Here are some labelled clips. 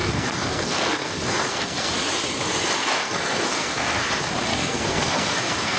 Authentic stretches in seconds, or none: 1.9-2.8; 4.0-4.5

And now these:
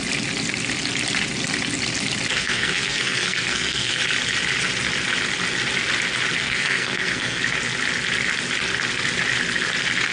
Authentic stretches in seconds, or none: 0.0-2.3; 4.0-6.3; 7.4-10.1

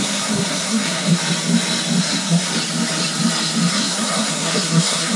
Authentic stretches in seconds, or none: 1.2-2.0; 2.5-3.7

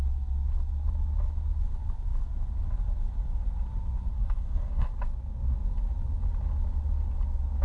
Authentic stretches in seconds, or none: 0.0-4.1; 4.9-7.6

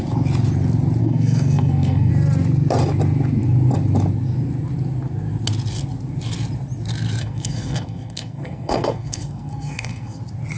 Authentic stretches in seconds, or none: 0.0-1.0; 2.1-7.2; 10.2-10.6

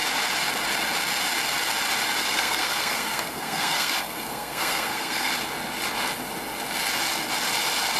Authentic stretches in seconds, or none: 0.0-2.2; 5.3-8.0

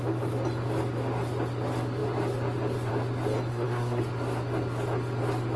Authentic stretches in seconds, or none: 0.0-3.5; 4.0-5.6

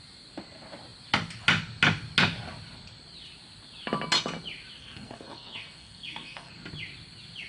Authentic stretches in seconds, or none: 0.0-4.8; 6.5-7.5